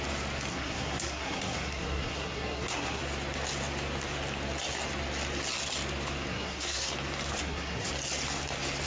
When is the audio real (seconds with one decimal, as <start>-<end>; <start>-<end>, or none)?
0.0-0.5; 3.0-6.3; 6.9-7.4; 7.9-8.9

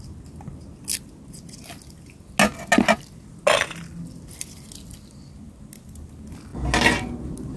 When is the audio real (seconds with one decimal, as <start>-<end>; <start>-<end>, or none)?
0.0-7.6

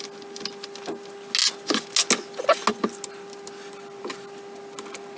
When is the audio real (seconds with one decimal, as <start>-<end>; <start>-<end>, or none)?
0.0-5.2

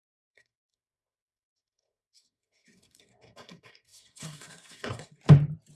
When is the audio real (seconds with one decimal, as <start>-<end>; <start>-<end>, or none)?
5.2-5.8

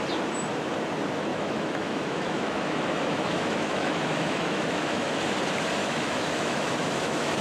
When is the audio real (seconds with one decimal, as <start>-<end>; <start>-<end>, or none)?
0.0-1.3; 5.2-5.8

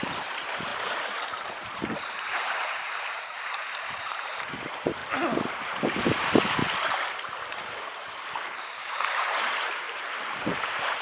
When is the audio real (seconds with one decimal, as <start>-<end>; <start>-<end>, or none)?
0.7-1.3; 5.0-5.7; 6.6-8.6

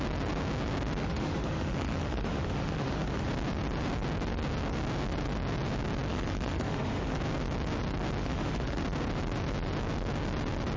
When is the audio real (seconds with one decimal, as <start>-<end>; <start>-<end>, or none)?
0.0-1.0; 3.3-6.1; 7.2-8.2; 8.8-10.8